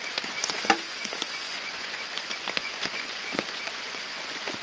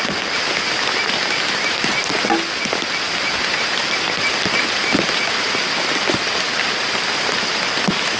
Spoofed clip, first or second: first